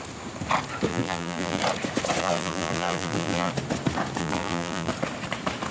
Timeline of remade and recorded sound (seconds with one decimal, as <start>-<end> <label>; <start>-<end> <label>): 0.0-0.9 recorded; 0.9-1.6 remade; 1.6-2.2 recorded; 2.2-3.5 remade; 3.5-4.2 recorded; 4.2-4.9 remade; 4.9-5.7 recorded

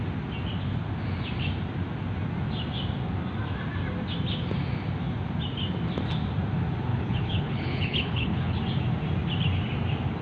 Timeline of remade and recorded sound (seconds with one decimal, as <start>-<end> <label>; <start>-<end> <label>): 0.0-6.9 recorded; 6.9-8.6 remade; 8.6-10.2 recorded

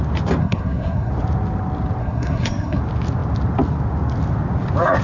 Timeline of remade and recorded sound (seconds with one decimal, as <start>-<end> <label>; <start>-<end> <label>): 0.0-0.4 recorded; 0.4-1.1 remade; 1.1-2.0 recorded; 2.0-2.8 remade; 2.8-5.0 recorded

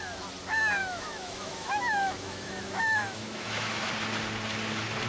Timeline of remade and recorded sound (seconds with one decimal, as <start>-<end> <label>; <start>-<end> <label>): 0.0-0.8 recorded; 0.8-3.9 remade; 3.9-5.1 recorded

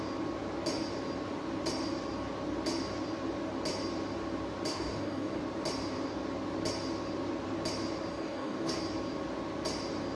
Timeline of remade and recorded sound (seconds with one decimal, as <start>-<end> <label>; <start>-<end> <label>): 0.0-4.7 recorded; 4.7-5.4 remade; 5.4-8.1 recorded; 8.1-8.8 remade; 8.8-10.1 recorded

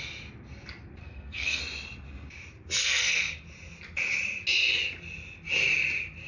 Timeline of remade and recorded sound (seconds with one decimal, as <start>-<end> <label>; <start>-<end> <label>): 0.0-1.0 recorded; 1.0-1.6 remade; 1.6-2.8 recorded; 2.8-3.3 remade; 3.3-6.3 recorded